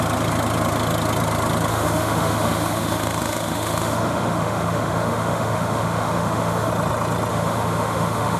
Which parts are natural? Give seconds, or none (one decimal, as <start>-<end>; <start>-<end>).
0.0-1.7; 6.7-7.3